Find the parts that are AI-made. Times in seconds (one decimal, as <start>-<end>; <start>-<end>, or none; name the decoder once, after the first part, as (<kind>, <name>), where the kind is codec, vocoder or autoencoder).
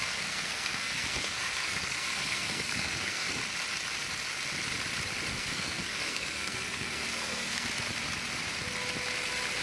0.0-3.4 (codec, SNAC); 5.3-7.7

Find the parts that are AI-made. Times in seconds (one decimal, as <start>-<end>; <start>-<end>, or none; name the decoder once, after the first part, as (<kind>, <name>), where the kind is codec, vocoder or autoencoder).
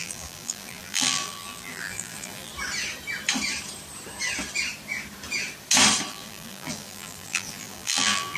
0.0-2.5 (vocoder, BigVGAN v2); 6.1-8.4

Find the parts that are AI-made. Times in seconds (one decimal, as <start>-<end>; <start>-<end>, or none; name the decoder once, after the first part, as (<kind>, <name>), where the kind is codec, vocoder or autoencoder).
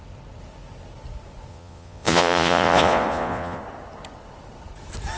1.5-3.6 (vocoder, Vocos)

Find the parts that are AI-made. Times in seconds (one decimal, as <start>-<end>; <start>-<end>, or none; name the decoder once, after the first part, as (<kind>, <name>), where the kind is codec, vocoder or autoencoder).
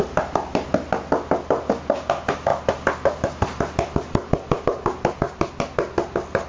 none